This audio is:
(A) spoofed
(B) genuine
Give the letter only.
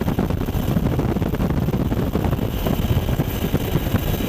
B